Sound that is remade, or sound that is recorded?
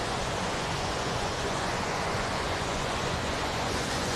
remade